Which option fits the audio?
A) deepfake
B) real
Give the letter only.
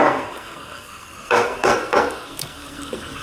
A